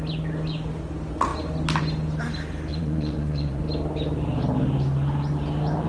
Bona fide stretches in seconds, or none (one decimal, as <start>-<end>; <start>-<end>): 0.0-2.7; 3.6-5.9